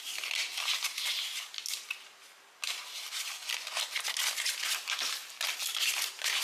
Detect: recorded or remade recorded